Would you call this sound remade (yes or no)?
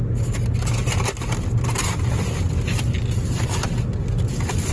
no